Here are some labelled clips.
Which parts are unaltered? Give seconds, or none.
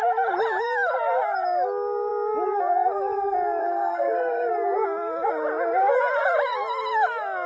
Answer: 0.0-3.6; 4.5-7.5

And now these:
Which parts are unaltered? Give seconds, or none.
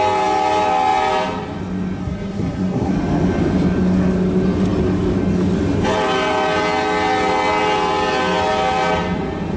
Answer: 0.0-2.0; 2.9-9.6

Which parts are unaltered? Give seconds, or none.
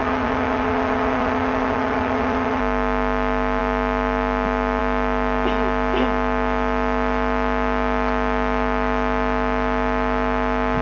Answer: 2.6-10.8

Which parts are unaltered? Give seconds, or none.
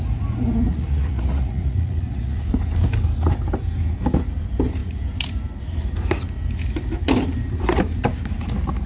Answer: 0.0-0.7; 2.5-8.9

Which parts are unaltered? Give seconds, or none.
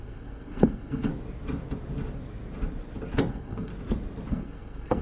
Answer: 1.1-3.3; 3.7-4.3